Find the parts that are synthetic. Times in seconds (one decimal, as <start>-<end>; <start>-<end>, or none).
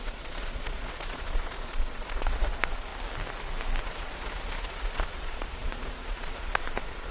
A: 0.0-2.9; 3.8-7.1